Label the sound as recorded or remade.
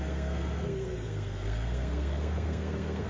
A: remade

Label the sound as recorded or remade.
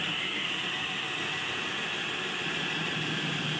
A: remade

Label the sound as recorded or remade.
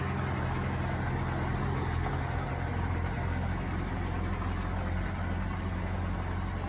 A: recorded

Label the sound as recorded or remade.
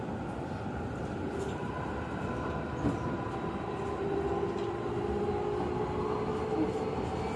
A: recorded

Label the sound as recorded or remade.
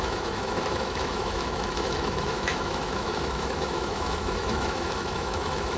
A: remade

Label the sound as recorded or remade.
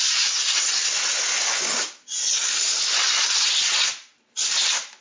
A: recorded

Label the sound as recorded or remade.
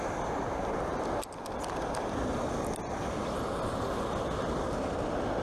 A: recorded